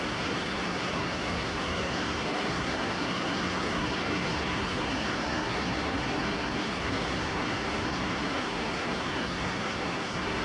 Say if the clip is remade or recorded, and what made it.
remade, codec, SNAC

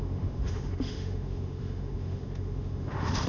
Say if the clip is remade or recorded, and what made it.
remade, autoencoder, DAC-VAE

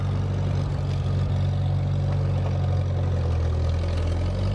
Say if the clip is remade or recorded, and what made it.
recorded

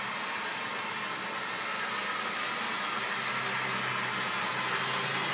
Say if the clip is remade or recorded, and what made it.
recorded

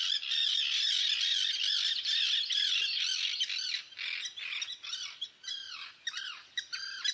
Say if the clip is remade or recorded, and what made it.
recorded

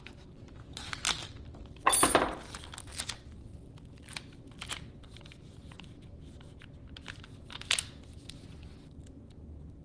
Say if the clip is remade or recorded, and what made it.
recorded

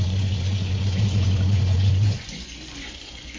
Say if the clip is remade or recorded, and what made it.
remade, vocoder, Vocos